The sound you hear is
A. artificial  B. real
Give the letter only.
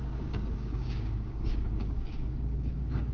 A